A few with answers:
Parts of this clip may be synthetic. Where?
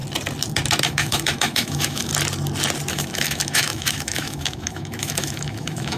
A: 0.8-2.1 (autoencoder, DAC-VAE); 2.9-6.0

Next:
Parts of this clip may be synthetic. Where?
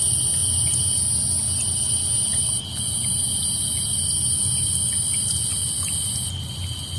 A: 5.5-7.0 (vocoder, BigVGAN v2)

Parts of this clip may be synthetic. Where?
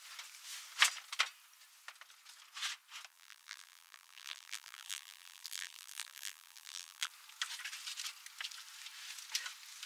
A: 3.1-7.1 (vocoder, BigVGAN v2)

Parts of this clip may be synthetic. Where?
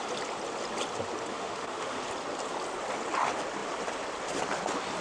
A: 1.3-2.0 (autoencoder, DAC-VAE)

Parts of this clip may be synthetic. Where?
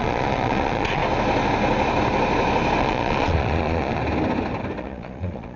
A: 0.0-1.0 (vocoder, Vocos); 2.8-4.0; 4.8-5.6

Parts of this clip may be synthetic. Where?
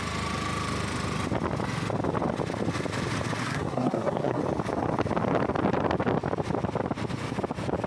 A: 3.4-4.4 (codec, SNAC)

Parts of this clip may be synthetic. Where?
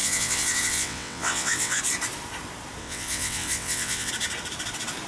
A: 0.0-1.8 (vocoder, WaveNeXt); 2.8-4.1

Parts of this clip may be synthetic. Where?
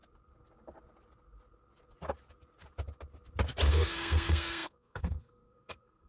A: 3.7-6.1 (codec, SNAC)